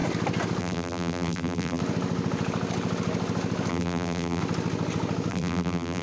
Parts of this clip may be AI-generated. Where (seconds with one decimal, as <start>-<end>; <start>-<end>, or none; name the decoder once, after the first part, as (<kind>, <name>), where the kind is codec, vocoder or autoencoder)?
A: 0.6-1.8 (vocoder, BigVGAN v2); 3.7-4.4; 5.3-6.0